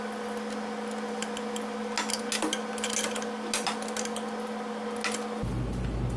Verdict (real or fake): real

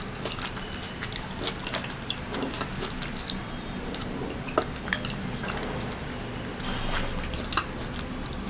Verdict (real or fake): real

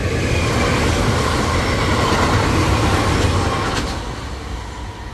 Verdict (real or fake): real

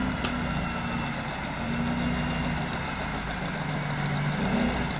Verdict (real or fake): real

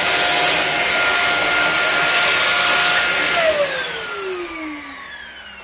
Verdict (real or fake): real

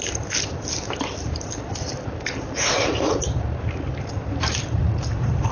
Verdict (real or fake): fake